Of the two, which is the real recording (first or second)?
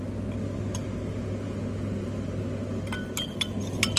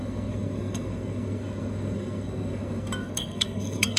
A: first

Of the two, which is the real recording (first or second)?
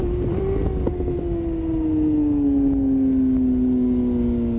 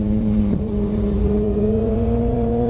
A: first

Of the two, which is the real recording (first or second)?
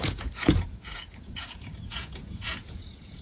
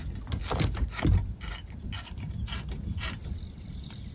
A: second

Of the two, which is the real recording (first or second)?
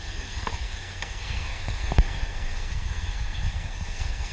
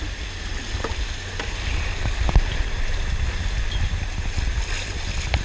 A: second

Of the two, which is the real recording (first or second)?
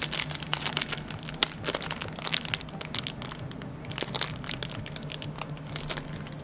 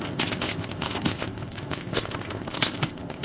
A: first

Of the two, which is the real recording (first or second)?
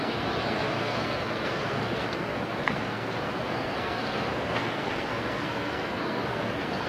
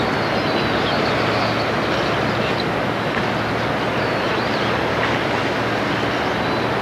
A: second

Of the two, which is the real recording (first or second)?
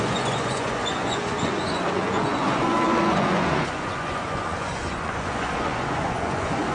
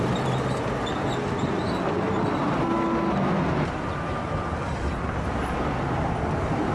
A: second